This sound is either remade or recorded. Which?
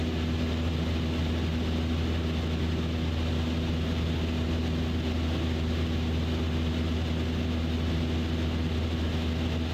recorded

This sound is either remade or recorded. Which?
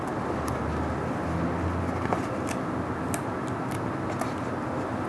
recorded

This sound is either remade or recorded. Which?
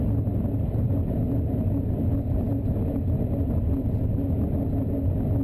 recorded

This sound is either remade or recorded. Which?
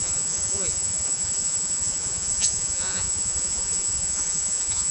remade